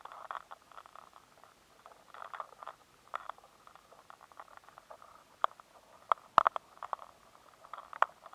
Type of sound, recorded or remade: recorded